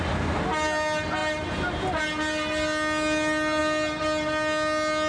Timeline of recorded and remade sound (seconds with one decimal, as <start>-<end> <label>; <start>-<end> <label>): 0.0-5.1 recorded